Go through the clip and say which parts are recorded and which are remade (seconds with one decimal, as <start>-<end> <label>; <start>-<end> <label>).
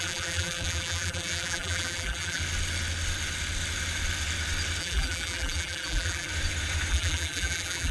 0.0-2.4 remade; 2.4-4.8 recorded; 4.8-6.3 remade; 6.3-6.9 recorded; 6.9-7.9 remade